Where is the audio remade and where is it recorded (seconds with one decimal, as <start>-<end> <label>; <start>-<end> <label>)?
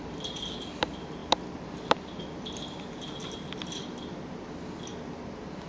0.0-5.7 recorded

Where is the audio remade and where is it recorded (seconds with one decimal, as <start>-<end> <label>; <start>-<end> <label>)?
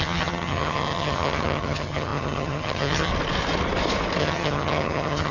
0.0-3.1 remade; 3.1-4.2 recorded; 4.2-5.3 remade